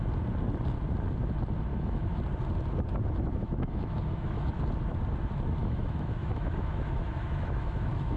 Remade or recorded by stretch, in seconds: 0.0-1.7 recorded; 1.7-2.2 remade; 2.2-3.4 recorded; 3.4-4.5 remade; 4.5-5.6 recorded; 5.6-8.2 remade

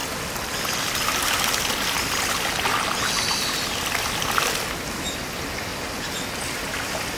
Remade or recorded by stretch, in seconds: 0.0-7.2 recorded

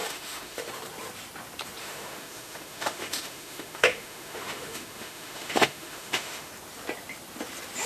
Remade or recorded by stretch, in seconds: 0.0-0.7 remade; 0.7-1.8 recorded; 1.8-6.5 remade; 6.5-7.9 recorded

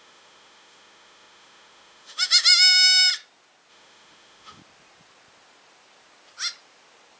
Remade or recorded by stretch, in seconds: 0.0-3.1 remade; 3.1-3.7 recorded; 3.7-4.6 remade; 4.6-7.2 recorded

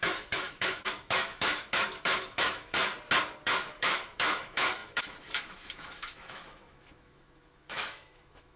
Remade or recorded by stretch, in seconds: 0.0-2.8 remade; 2.8-3.4 recorded; 3.4-8.6 remade